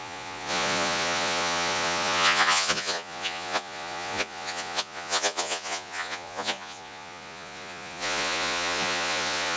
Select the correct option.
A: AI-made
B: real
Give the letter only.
A